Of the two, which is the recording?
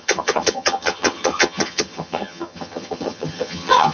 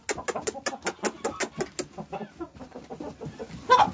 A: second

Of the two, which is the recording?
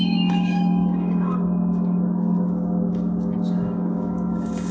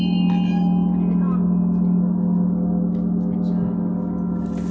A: second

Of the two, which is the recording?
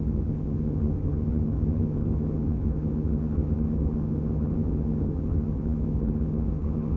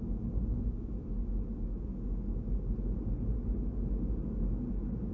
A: second